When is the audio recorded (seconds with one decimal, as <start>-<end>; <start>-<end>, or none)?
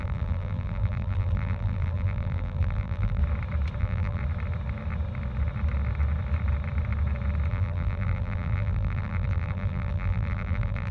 3.2-3.8; 4.2-7.5